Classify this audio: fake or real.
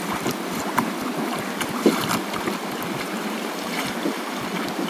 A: real